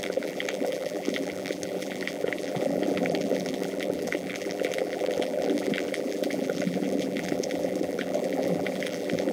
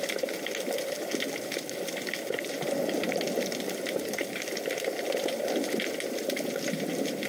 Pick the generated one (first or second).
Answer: first